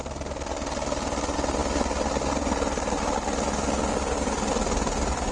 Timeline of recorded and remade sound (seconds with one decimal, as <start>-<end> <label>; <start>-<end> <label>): 0.0-5.3 recorded